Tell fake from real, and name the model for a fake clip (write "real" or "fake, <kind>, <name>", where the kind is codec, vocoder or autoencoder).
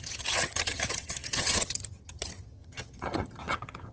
fake, vocoder, HiFi-GAN